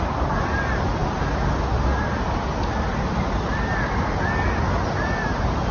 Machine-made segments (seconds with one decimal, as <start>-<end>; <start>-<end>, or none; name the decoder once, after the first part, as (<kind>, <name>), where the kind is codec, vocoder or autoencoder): none